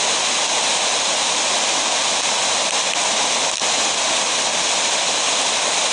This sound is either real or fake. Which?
real